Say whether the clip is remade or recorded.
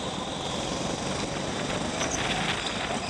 recorded